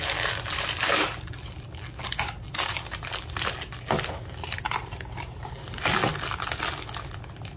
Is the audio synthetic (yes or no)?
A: no